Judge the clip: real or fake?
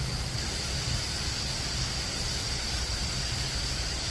real